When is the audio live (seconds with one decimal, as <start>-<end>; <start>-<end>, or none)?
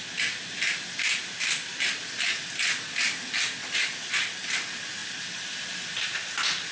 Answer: 0.0-6.7